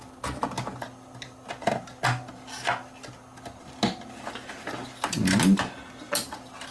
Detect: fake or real real